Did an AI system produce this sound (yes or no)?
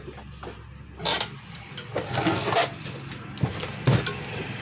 no